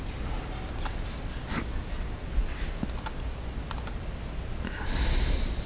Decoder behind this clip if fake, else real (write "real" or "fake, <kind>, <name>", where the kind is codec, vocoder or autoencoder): real